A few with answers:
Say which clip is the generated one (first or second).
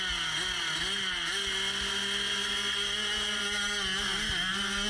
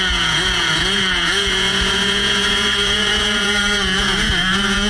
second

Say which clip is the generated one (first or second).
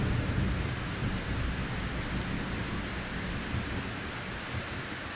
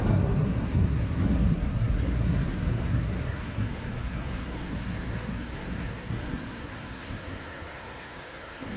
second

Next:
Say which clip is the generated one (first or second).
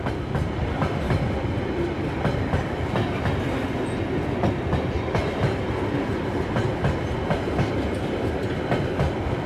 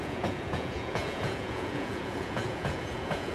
second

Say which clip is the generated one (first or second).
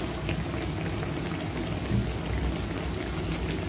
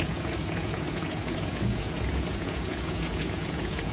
second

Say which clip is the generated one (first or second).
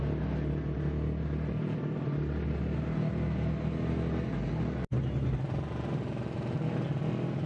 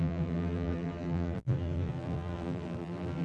second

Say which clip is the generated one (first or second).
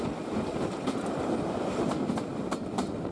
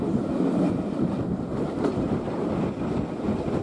second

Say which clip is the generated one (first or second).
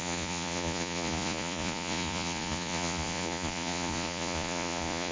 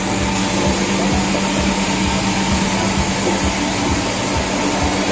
first